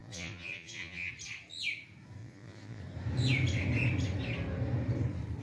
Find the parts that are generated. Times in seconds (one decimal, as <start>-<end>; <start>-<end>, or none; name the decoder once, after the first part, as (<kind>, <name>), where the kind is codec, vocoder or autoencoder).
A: 0.0-1.1 (vocoder, Vocos); 2.2-2.8